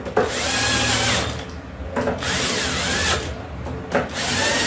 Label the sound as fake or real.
real